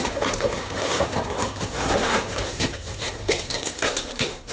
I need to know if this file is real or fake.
fake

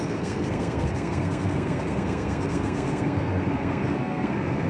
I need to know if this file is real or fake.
fake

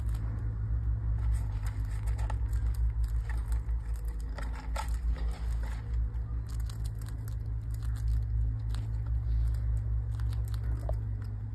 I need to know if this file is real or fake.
real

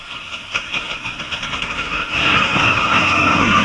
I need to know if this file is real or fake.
fake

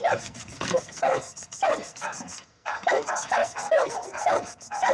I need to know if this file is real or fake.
fake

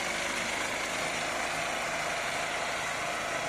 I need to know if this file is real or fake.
real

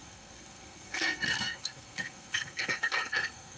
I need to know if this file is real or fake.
fake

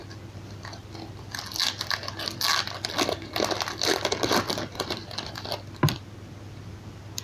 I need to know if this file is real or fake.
real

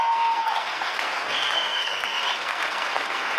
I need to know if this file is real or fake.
fake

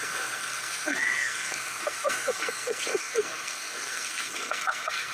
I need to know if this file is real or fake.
fake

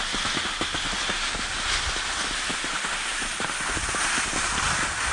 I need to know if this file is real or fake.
real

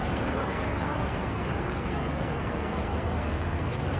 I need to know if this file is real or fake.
fake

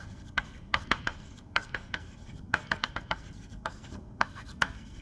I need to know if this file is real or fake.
fake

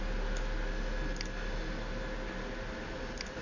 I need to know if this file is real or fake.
real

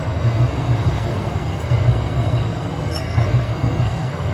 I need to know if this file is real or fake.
fake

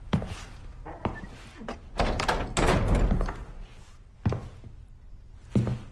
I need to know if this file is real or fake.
real